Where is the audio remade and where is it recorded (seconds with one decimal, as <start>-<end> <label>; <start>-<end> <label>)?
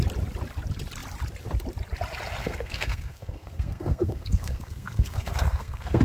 0.0-2.4 recorded; 2.4-6.0 remade